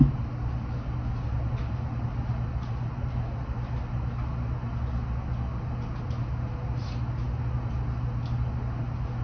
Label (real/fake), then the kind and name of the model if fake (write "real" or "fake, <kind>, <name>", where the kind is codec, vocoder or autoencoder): real